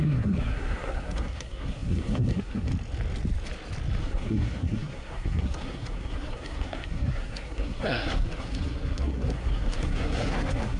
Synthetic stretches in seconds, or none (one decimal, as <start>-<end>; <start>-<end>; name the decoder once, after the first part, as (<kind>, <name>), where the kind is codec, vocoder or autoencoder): 0.0-2.7 (codec, SNAC); 4.0-10.8